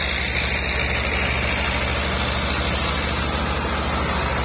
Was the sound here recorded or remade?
recorded